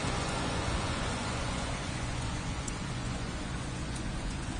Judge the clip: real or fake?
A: fake